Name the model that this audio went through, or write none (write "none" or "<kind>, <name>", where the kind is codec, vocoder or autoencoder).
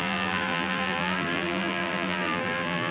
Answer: vocoder, BigVGAN v2